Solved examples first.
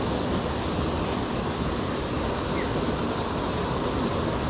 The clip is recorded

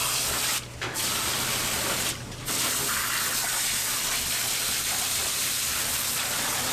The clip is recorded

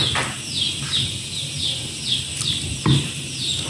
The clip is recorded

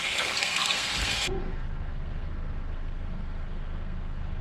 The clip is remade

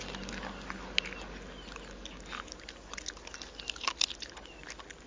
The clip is recorded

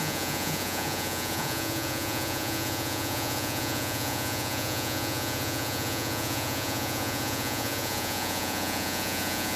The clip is remade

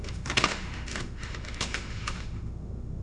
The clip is remade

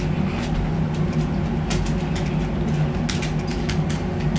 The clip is recorded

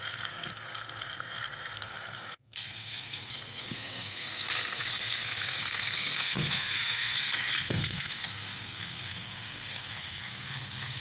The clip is remade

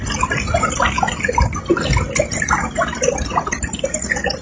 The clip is recorded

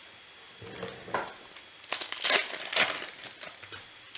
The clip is recorded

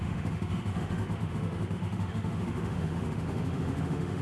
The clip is remade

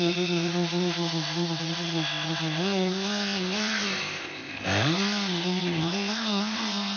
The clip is remade